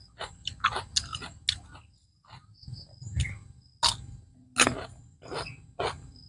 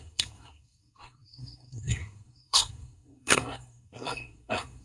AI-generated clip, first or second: second